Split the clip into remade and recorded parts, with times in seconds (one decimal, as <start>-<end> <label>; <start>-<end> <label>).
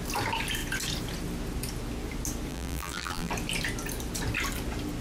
0.0-2.5 recorded; 2.5-3.3 remade; 3.3-5.0 recorded